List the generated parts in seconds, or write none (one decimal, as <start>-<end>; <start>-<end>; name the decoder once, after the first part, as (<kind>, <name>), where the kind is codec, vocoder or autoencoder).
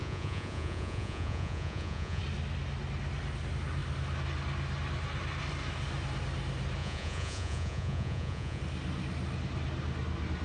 0.0-2.2 (vocoder, Vocos); 6.8-8.6